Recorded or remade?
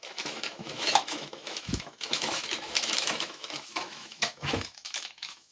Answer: remade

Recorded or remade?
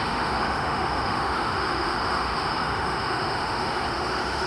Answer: remade